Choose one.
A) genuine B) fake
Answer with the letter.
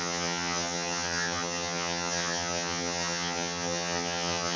B